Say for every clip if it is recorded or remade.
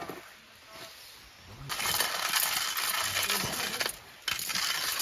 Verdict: recorded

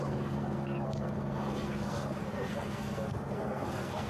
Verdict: remade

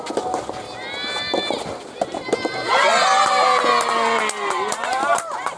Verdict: recorded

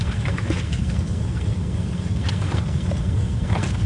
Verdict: remade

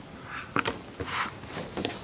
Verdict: recorded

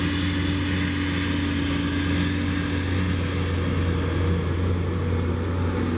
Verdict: recorded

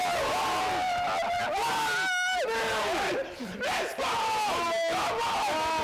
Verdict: recorded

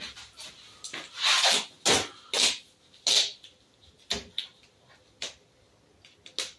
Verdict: recorded